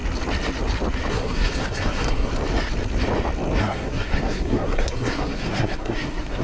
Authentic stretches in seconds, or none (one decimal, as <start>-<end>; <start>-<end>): 0.0-1.1; 2.3-3.6